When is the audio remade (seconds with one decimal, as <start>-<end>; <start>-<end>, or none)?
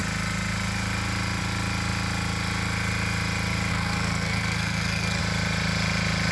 3.7-5.2